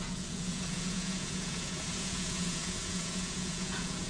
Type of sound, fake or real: fake